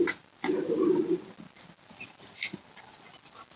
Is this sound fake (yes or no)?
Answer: no